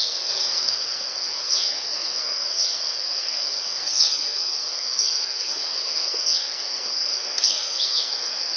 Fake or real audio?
fake